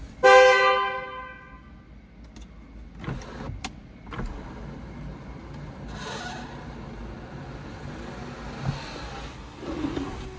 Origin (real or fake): real